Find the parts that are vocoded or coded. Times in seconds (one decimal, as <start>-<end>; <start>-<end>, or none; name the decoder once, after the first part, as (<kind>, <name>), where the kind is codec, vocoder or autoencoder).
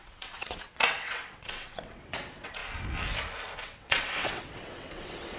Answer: 0.0-2.6 (vocoder, WaveNeXt); 3.6-5.4